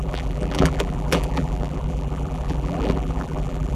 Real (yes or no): no